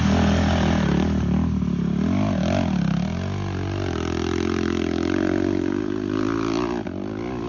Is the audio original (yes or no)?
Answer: yes